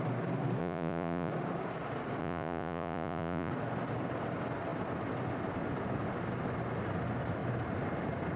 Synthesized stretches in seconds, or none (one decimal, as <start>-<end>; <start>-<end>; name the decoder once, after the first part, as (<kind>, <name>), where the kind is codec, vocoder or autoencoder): 0.6-1.3 (vocoder, Vocos); 2.2-3.5

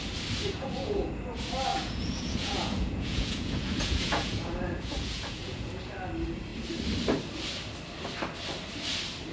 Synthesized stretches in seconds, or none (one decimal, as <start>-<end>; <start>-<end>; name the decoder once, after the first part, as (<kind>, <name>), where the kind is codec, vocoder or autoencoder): 0.4-1.1 (vocoder, Vocos); 1.7-5.7

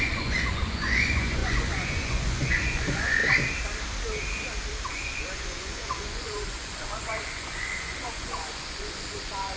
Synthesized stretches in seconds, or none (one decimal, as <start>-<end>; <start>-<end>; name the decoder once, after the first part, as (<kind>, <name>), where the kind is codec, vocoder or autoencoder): 0.0-3.2 (vocoder, Vocos); 4.9-9.6